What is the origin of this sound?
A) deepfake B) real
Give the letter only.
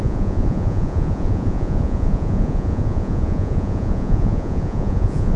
A